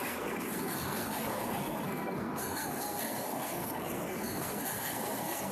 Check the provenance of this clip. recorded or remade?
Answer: remade